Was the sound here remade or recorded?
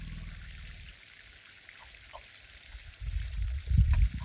recorded